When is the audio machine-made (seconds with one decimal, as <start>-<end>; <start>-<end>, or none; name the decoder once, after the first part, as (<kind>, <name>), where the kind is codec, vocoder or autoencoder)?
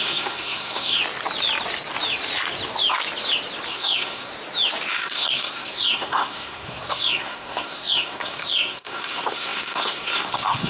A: 0.0-1.0 (codec, SNAC); 3.7-4.3; 4.9-10.7